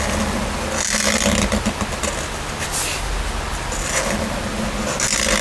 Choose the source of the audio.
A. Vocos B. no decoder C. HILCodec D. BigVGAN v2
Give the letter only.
B